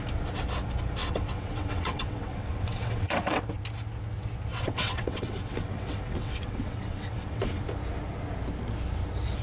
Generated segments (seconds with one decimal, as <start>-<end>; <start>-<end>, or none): 1.0-3.4; 4.5-7.6